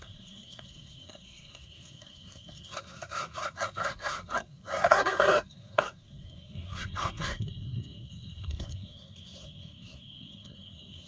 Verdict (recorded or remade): remade